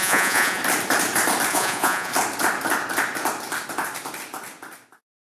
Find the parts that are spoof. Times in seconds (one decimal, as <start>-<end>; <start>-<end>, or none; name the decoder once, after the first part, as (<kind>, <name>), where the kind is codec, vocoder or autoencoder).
0.0-0.6 (vocoder, Vocos); 1.5-2.1